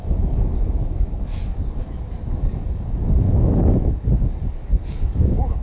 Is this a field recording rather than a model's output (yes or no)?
no